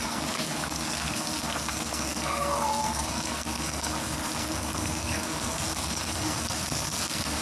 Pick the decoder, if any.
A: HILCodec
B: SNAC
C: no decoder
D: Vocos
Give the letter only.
B